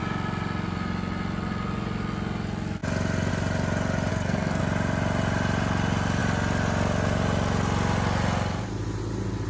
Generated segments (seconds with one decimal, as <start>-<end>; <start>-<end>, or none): 4.1-4.6